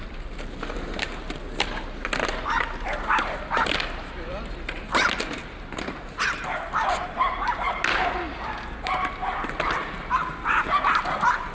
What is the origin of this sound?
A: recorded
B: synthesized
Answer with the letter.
A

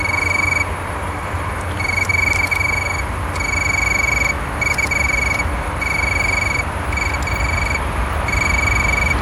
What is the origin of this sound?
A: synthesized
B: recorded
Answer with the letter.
B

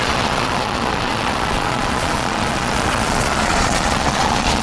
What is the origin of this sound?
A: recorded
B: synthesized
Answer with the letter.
B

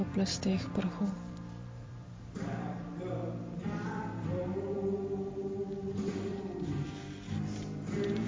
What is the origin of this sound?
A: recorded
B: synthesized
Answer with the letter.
B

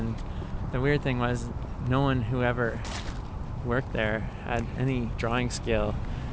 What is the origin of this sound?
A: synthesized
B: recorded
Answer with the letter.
B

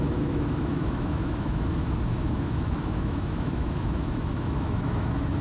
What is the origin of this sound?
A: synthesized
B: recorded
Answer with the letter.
A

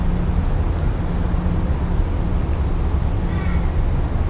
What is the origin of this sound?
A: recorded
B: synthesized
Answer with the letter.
A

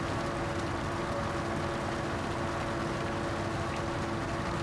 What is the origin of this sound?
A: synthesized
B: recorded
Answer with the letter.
B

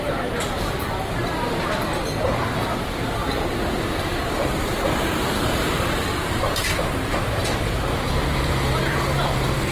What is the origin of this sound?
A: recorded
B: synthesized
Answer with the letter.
B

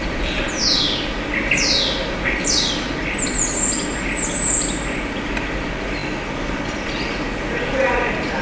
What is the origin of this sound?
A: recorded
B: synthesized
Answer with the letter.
A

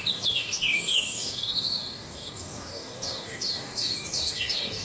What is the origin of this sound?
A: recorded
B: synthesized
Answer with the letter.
B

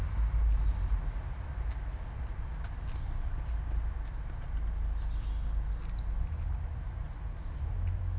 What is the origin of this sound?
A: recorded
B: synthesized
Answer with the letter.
A